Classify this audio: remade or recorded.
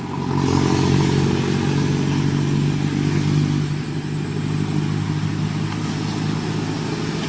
recorded